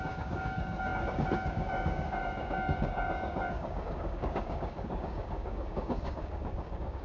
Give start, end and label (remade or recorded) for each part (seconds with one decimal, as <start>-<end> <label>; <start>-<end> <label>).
0.0-7.0 remade